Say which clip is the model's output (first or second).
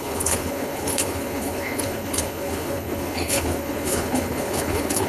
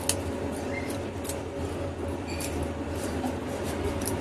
first